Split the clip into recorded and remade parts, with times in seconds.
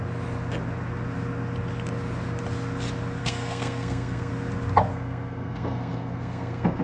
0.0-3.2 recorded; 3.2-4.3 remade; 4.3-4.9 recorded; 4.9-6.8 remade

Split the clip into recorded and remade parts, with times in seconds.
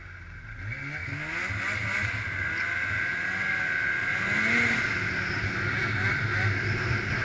0.0-7.2 recorded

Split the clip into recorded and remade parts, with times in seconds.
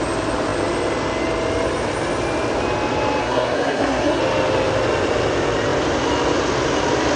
0.0-3.2 recorded; 3.2-4.2 remade; 4.2-7.2 recorded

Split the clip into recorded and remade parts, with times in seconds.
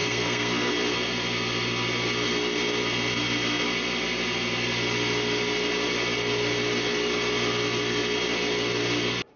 0.0-0.7 remade; 0.7-9.4 recorded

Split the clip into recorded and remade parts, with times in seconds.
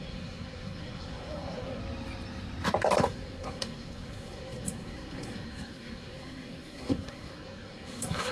0.0-1.8 remade; 1.8-3.0 recorded; 3.0-8.3 remade